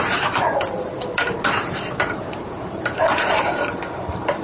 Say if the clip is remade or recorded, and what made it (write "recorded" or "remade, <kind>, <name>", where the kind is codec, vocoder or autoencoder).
remade, vocoder, BigVGAN v2